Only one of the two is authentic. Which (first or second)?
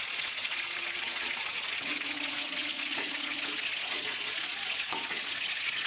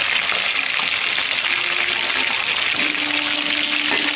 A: second